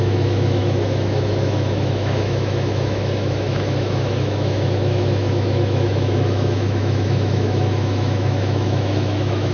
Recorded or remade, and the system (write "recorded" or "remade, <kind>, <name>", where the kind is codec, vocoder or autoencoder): remade, autoencoder, DAC-VAE